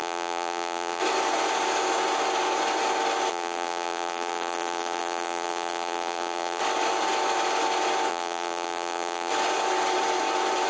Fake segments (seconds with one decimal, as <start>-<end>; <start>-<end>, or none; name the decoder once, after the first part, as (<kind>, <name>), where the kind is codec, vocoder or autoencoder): 0.0-1.0 (vocoder, BigVGAN v2); 3.3-6.6; 8.1-9.3